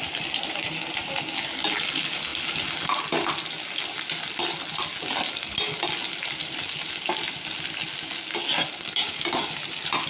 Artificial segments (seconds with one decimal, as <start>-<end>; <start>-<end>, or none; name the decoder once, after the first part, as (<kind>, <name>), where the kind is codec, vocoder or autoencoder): none